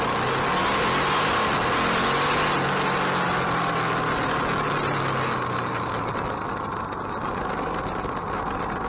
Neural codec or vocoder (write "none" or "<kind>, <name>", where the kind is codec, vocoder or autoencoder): none